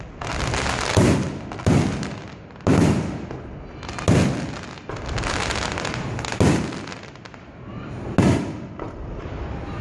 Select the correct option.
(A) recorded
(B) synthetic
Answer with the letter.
A